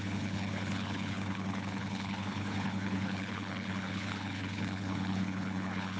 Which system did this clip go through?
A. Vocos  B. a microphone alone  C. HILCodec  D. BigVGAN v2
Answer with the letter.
C